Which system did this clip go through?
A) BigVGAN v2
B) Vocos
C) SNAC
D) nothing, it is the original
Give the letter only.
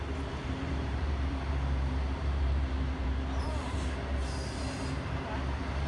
A